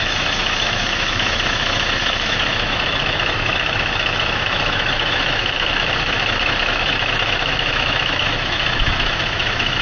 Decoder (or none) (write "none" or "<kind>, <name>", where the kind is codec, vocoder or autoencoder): autoencoder, DAC-VAE